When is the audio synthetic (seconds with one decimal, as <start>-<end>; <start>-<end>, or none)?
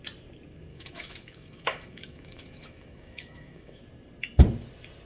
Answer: 0.7-3.8